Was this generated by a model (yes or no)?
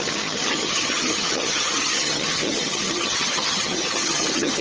yes